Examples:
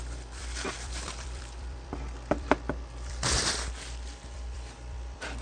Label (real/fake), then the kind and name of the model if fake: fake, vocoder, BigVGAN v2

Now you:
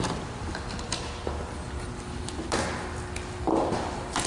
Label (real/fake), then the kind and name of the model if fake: real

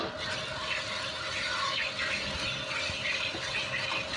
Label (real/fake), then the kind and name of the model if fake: real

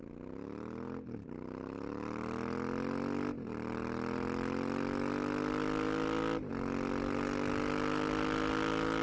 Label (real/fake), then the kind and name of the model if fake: real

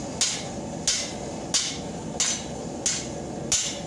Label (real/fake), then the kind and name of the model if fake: real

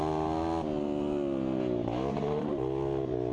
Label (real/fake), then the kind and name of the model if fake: real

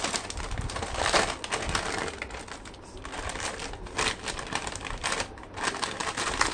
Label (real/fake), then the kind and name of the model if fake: real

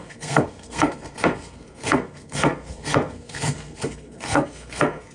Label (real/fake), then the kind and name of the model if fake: fake, codec, SNAC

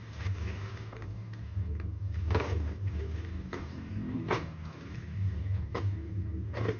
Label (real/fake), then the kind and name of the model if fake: fake, codec, DAC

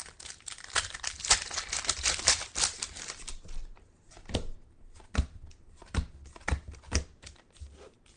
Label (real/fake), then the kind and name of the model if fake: real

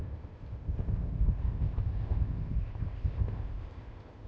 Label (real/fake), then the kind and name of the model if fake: fake, codec, ZipCodec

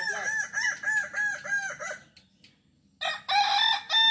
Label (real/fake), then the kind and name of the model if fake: real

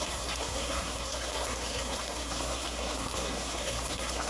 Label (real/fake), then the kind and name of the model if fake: fake, codec, SNAC